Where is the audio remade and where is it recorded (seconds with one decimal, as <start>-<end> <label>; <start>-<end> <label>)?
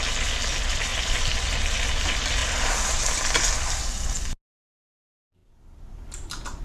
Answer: 0.0-0.9 recorded; 0.9-1.4 remade; 1.4-2.4 recorded; 2.4-3.8 remade; 3.8-5.4 recorded; 5.4-6.6 remade